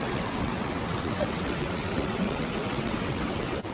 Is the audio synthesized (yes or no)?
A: yes